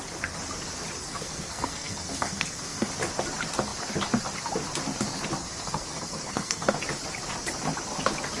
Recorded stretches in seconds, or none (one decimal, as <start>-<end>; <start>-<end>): 0.0-1.0; 2.9-5.4; 6.8-8.4